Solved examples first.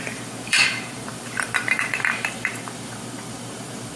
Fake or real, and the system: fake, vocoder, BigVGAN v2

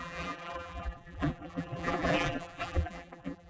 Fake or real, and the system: fake, vocoder, BigVGAN v2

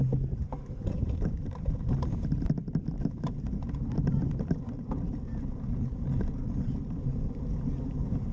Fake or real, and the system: fake, vocoder, BigVGAN v2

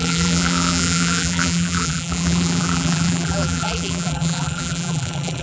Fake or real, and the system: fake, vocoder, BigVGAN v2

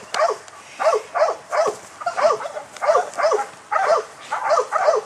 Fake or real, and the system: fake, vocoder, BigVGAN v2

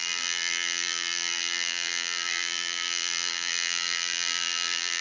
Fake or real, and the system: fake, vocoder, BigVGAN v2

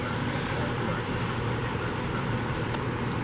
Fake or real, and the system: fake, vocoder, BigVGAN v2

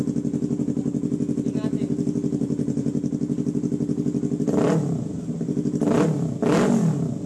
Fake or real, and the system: real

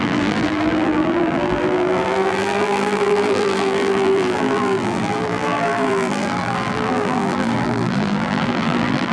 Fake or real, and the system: fake, vocoder, BigVGAN v2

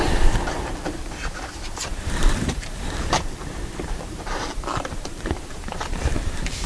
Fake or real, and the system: fake, vocoder, BigVGAN v2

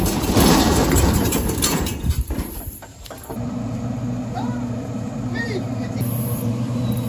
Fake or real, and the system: fake, vocoder, BigVGAN v2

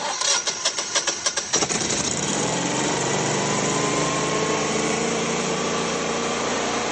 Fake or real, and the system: fake, vocoder, BigVGAN v2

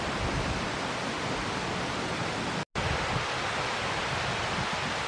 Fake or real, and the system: real